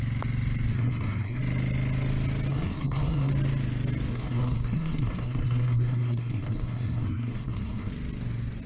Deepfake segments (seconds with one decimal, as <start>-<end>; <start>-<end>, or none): 0.7-1.4; 2.5-3.3; 4.1-7.9